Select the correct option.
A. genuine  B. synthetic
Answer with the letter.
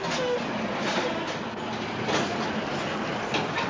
A